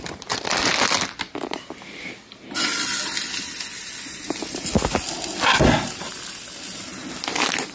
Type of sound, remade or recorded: recorded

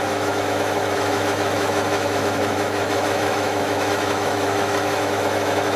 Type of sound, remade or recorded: remade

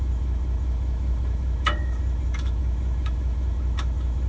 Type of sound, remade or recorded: remade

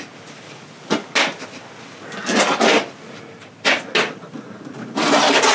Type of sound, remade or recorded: recorded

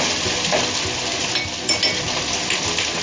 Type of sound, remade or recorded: recorded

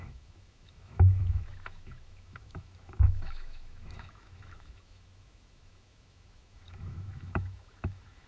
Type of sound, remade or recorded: remade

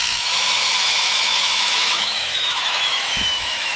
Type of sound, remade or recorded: remade